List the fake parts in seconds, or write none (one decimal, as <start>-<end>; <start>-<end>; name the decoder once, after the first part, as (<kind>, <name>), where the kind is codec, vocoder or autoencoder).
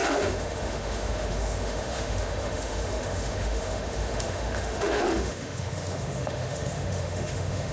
0.0-7.7 (autoencoder, DAC-VAE)